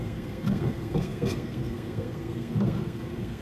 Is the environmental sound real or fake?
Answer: fake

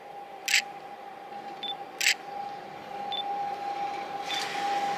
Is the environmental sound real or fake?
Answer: real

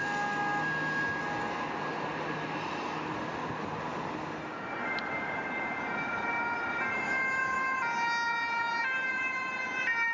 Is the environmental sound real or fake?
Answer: real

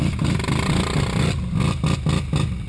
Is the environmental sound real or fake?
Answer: real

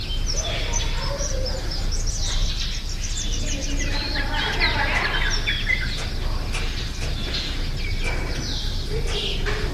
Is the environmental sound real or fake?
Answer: real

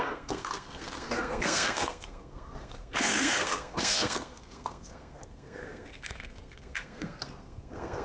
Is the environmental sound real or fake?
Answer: fake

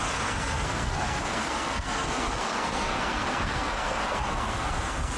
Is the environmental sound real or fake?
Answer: fake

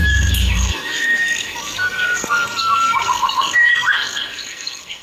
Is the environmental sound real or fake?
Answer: fake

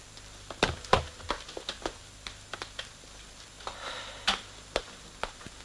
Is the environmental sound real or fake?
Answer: real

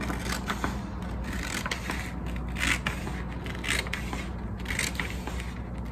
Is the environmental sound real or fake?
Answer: real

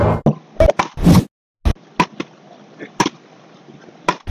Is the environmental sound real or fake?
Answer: real